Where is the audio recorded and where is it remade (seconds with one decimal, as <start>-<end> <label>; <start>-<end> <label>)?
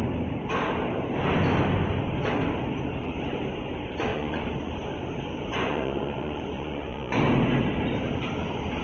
0.0-4.1 recorded; 4.1-4.7 remade; 4.7-5.5 recorded; 5.5-7.2 remade; 7.2-8.8 recorded